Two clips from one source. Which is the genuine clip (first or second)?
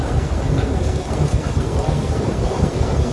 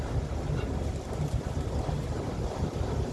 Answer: second